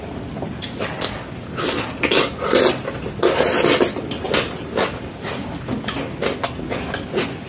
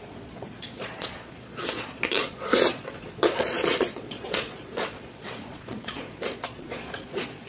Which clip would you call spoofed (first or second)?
second